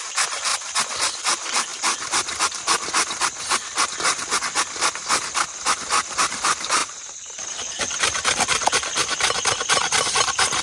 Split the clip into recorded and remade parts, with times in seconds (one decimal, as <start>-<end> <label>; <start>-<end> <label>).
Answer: 0.0-0.5 remade; 0.5-1.2 recorded; 1.2-1.7 remade; 1.7-6.2 recorded; 6.2-9.0 remade; 9.0-10.1 recorded; 10.1-10.6 remade